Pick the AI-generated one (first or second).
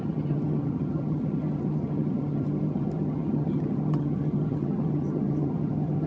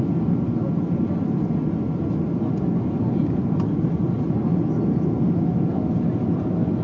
first